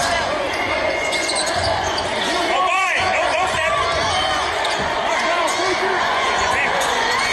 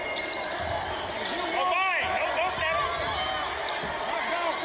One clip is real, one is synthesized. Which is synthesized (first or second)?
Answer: first